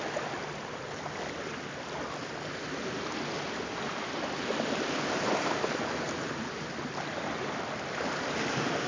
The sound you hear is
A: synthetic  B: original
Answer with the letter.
B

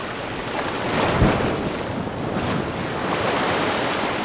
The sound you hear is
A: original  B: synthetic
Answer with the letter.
A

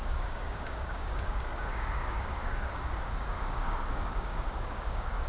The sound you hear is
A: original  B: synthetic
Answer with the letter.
B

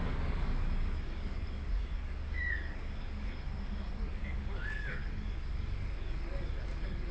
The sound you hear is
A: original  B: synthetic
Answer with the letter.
B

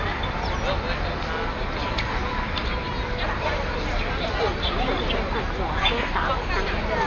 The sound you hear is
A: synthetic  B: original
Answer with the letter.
B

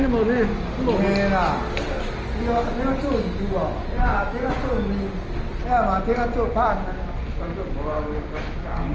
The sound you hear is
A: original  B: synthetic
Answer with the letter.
A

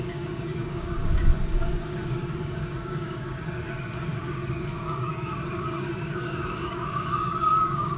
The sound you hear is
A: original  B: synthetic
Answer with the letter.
B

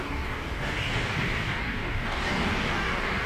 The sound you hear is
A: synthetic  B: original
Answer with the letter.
A